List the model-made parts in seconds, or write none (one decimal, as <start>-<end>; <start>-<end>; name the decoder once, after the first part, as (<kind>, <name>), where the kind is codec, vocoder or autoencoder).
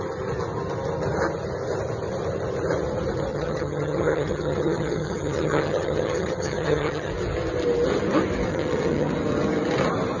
3.3-7.1 (vocoder, HiFi-GAN); 8.5-9.1